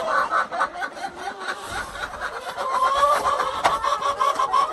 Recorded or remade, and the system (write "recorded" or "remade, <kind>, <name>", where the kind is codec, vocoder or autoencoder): remade, vocoder, BigVGAN v2